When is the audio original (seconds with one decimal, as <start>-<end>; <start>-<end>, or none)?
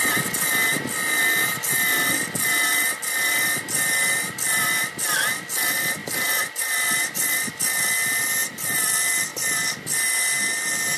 0.0-11.0